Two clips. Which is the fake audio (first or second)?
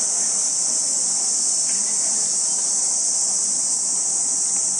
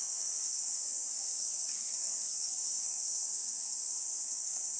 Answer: second